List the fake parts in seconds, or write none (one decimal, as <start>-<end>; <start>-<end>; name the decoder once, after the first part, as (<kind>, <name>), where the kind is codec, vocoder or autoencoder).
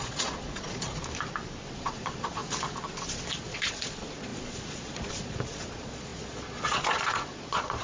0.0-1.0 (vocoder, Vocos); 1.7-2.4; 3.4-7.8